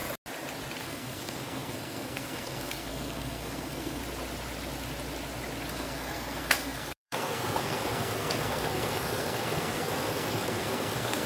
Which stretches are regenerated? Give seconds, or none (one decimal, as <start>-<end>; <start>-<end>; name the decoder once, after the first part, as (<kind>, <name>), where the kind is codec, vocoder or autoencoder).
0.8-4.0 (codec, SNAC); 5.7-11.3